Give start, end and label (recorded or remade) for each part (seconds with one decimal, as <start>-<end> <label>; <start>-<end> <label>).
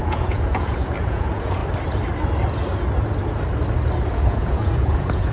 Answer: 0.0-1.6 remade; 1.6-4.1 recorded; 4.1-5.3 remade